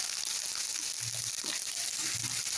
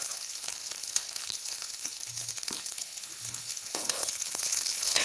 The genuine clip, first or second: first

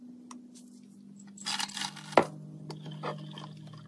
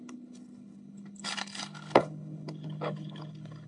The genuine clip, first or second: first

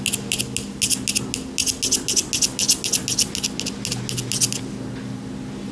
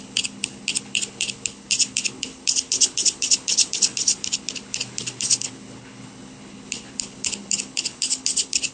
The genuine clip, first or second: first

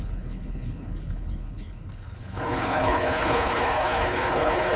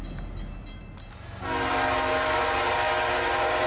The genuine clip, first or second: second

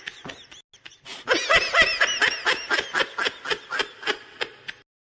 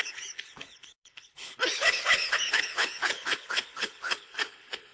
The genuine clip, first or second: first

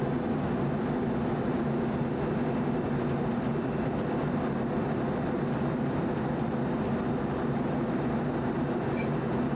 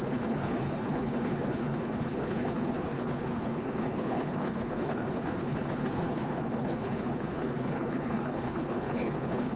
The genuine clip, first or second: first